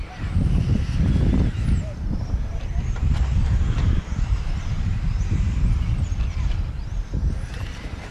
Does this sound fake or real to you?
fake